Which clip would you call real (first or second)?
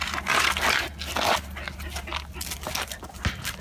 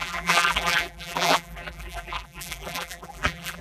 first